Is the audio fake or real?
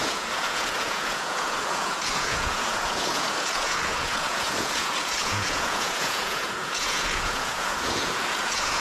fake